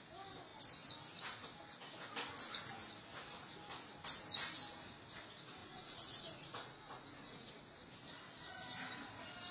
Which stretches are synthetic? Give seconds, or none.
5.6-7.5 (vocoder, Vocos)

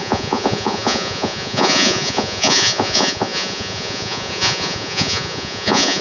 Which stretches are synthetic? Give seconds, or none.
0.0-6.0 (vocoder, Vocos)

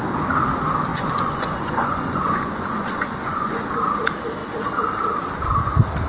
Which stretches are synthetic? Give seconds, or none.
0.9-3.8 (vocoder, Vocos)

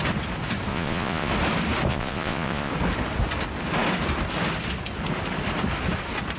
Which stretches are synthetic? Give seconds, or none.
0.7-1.3 (vocoder, Vocos); 1.9-2.7

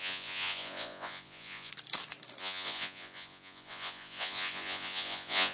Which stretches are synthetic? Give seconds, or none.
0.0-1.7 (vocoder, Vocos); 2.4-5.5

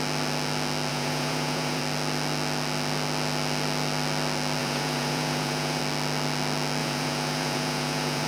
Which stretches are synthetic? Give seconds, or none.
0.9-1.8 (vocoder, Vocos); 4.6-5.8; 6.8-8.3

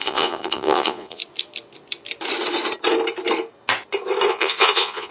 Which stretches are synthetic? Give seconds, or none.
0.0-1.2 (vocoder, Vocos); 4.3-5.1

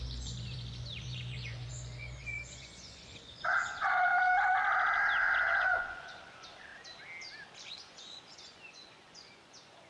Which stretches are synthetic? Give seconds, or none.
0.0-4.1 (vocoder, Vocos); 5.4-6.7; 7.6-9.9